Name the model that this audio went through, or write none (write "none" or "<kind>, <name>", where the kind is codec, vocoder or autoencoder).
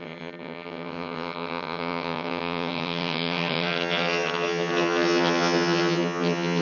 vocoder, HiFi-GAN